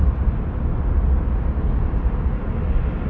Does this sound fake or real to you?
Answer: real